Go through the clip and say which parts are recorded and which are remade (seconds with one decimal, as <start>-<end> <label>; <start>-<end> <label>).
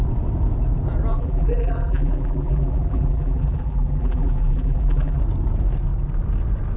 0.0-1.1 recorded; 1.1-5.2 remade; 5.2-6.8 recorded